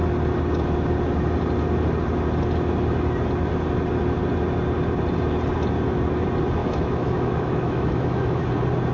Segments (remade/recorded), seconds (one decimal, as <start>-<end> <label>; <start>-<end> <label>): 0.0-6.6 recorded; 6.6-8.5 remade; 8.5-8.9 recorded